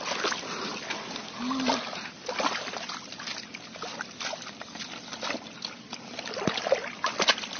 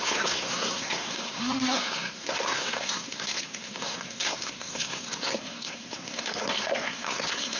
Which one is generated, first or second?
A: second